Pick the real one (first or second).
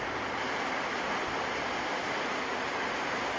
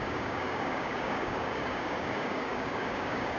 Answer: first